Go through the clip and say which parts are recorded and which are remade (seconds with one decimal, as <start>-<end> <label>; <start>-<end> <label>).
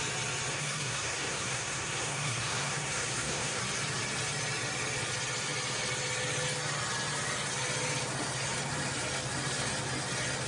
0.0-0.5 recorded; 0.5-3.6 remade; 3.6-10.5 recorded